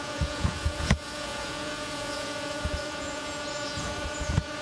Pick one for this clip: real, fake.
fake